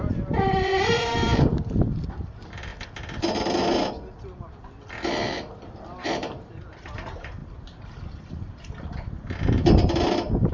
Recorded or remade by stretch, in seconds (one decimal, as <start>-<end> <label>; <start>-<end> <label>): 0.0-2.7 remade; 2.7-3.9 recorded; 3.9-10.5 remade